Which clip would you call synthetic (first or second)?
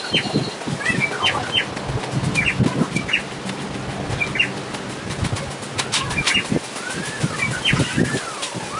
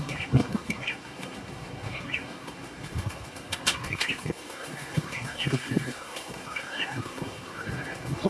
second